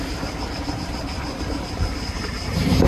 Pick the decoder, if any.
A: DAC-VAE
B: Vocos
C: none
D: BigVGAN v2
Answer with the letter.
D